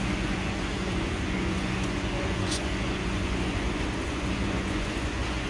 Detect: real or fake fake